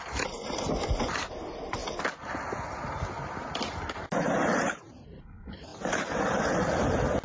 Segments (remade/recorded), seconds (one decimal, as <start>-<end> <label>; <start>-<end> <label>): 0.0-1.8 remade; 1.8-5.1 recorded; 5.1-7.2 remade